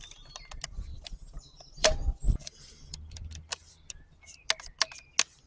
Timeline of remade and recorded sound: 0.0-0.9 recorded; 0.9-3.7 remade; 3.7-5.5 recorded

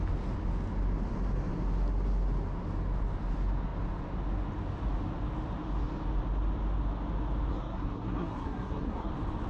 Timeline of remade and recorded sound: 0.0-7.5 recorded; 7.5-9.1 remade; 9.1-9.5 recorded

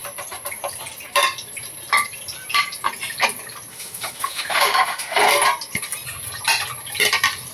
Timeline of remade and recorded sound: 0.0-3.7 recorded; 3.7-5.2 remade; 5.2-7.5 recorded

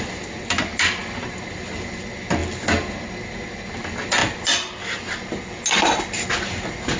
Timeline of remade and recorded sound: 0.0-0.7 recorded; 0.7-1.8 remade; 1.8-7.0 recorded

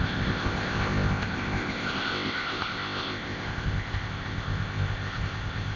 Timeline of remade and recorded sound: 0.0-5.8 remade

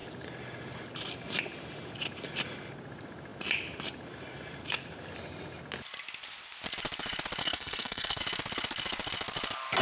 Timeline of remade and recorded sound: 0.0-7.4 recorded; 7.4-8.2 remade; 8.2-9.8 recorded